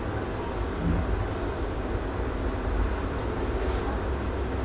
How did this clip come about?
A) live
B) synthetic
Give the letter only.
A